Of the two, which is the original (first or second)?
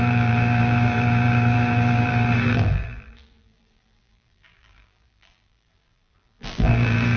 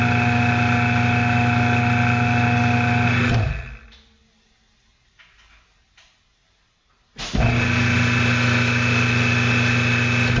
second